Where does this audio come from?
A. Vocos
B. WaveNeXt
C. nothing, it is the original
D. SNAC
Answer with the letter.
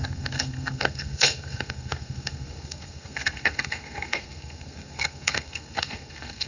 D